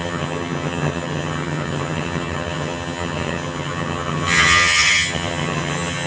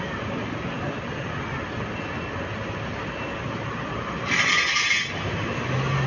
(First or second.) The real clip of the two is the second